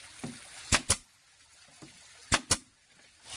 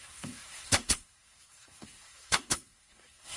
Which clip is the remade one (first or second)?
second